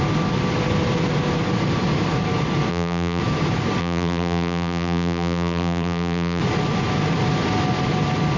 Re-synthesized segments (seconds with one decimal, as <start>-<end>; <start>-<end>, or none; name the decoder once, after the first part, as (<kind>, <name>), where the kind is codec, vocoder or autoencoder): 2.7-3.2 (vocoder, BigVGAN v2); 3.8-6.4